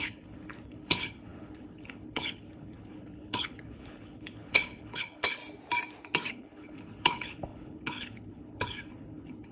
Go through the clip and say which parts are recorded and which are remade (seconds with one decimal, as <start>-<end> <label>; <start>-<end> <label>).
0.0-5.4 remade; 5.4-6.3 recorded; 6.3-9.5 remade